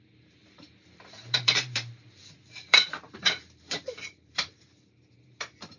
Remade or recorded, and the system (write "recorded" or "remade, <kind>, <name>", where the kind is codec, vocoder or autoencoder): remade, vocoder, BigVGAN v2